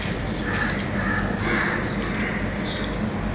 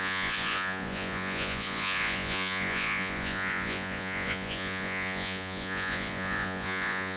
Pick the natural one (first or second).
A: first